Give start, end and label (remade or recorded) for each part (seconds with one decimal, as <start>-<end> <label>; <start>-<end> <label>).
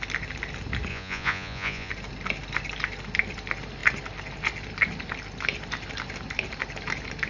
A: 0.0-0.9 recorded; 0.9-1.9 remade; 1.9-7.3 recorded